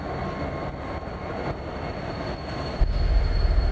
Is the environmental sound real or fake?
real